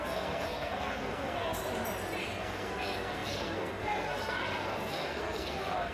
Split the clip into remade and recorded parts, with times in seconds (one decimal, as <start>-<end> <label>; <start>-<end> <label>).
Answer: 0.0-1.6 remade; 1.6-2.2 recorded; 2.2-5.9 remade